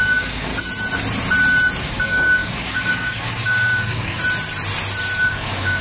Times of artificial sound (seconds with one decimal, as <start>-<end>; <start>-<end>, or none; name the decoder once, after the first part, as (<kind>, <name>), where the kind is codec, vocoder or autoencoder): 0.0-0.5 (codec, DAC); 1.8-4.2; 5.2-5.8